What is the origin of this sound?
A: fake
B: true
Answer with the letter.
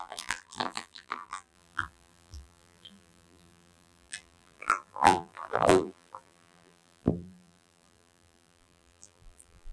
A